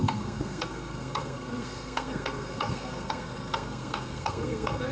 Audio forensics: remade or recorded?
remade